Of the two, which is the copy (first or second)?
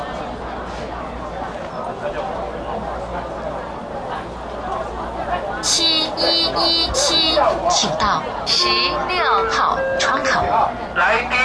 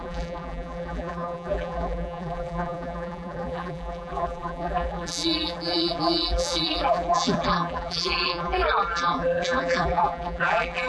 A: second